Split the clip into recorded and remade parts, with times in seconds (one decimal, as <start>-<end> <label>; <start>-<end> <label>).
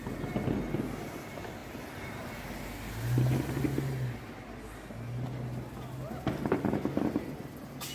0.0-7.9 recorded